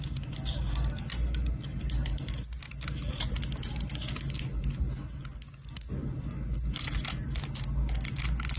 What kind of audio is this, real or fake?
real